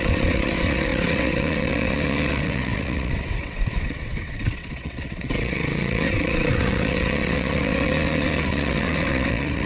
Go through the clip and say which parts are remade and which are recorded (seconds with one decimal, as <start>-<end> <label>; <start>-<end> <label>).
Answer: 0.0-9.7 remade